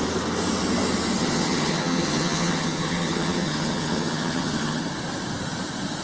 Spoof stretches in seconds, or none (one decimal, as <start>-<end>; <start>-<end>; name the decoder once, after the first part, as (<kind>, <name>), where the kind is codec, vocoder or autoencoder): 1.2-4.8 (vocoder, HiFi-GAN)